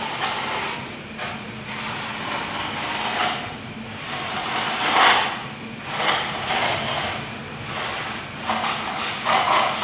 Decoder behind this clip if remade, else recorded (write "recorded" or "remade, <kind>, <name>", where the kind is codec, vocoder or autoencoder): recorded